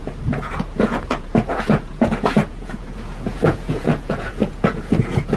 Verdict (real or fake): fake